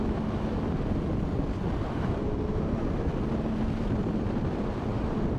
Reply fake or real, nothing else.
real